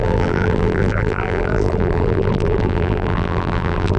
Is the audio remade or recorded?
remade